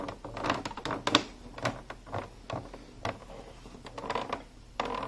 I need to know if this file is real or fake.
real